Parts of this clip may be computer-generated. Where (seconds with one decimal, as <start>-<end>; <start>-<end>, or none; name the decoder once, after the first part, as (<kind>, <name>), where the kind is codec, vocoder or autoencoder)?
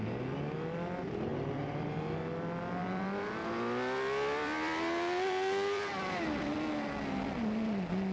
1.3-1.9 (vocoder, BigVGAN v2); 2.8-6.5